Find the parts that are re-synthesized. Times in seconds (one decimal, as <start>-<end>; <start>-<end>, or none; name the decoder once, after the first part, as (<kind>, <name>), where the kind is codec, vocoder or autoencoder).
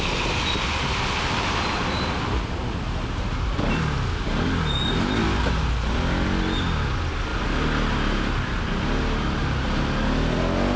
none